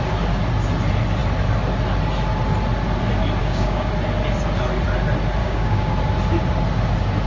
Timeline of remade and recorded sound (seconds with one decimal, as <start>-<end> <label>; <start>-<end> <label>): 0.0-3.4 recorded; 3.4-3.9 remade; 3.9-5.4 recorded; 5.4-5.9 remade; 5.9-7.3 recorded